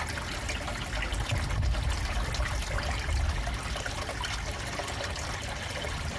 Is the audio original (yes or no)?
yes